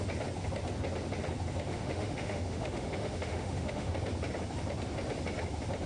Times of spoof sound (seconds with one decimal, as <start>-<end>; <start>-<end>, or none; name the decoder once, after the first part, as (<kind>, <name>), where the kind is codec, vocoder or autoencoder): 1.7-3.9 (autoencoder, DAC-VAE)